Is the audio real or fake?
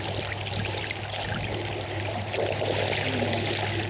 real